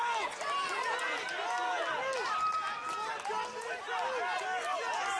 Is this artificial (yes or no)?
no